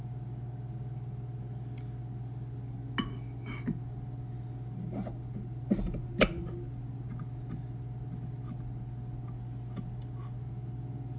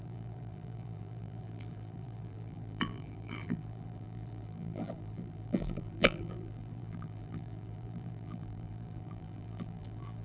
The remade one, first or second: second